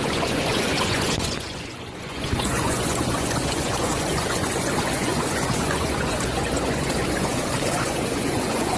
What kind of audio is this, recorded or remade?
remade